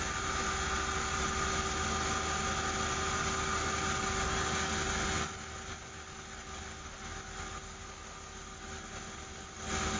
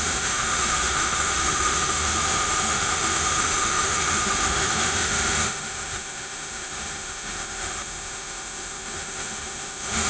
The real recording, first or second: first